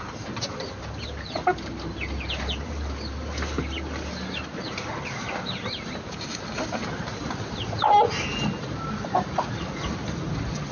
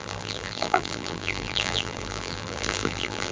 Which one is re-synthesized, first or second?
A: second